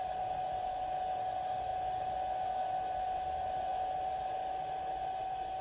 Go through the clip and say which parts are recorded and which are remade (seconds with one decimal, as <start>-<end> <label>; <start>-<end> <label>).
0.0-5.6 recorded